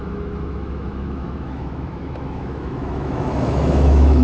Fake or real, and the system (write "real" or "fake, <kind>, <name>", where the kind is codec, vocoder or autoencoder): fake, autoencoder, DAC-VAE